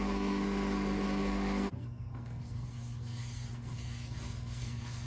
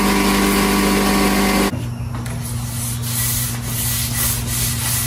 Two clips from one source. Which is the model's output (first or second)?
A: first